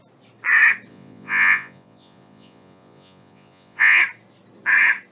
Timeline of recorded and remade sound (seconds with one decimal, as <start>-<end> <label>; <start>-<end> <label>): 0.0-0.9 recorded; 0.9-4.0 remade; 4.0-5.1 recorded